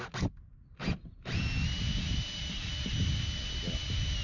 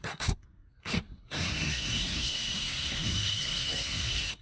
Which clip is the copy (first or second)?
second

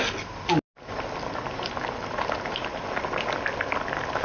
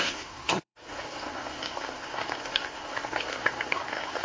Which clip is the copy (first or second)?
second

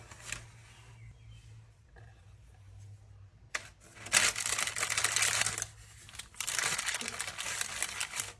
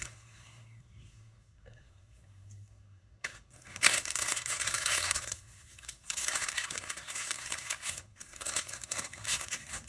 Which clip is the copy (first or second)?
second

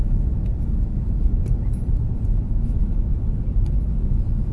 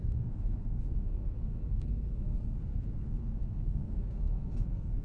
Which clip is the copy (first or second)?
second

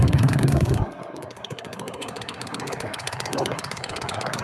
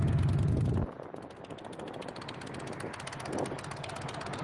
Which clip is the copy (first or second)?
first